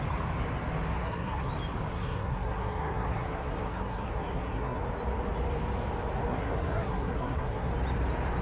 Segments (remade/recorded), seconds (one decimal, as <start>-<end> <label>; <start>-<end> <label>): 0.0-1.0 recorded; 1.0-1.5 remade; 1.5-1.9 recorded; 1.9-4.8 remade; 4.8-6.3 recorded; 6.3-7.7 remade; 7.7-8.4 recorded